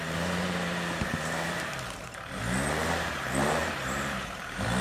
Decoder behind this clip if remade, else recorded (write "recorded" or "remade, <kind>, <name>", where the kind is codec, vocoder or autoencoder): remade, vocoder, BigVGAN v2